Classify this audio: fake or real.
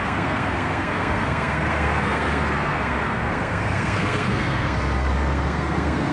fake